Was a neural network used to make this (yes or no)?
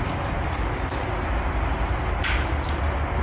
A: no